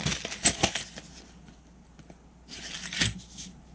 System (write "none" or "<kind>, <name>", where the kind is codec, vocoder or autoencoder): none